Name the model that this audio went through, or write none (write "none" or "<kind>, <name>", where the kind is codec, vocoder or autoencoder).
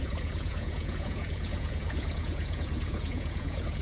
vocoder, Vocos